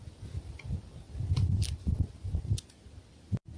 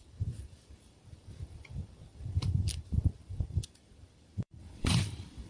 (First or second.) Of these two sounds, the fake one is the second